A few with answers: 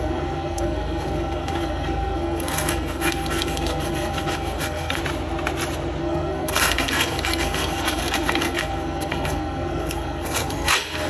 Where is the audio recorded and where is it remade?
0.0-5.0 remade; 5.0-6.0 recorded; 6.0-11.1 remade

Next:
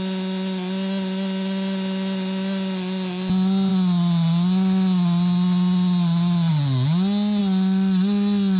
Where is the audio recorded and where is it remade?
0.0-8.6 recorded